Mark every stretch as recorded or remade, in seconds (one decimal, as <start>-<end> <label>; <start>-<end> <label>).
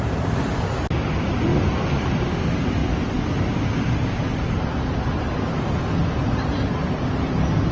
0.0-7.7 recorded